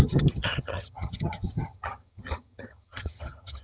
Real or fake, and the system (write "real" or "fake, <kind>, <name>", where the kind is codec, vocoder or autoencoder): fake, vocoder, HiFi-GAN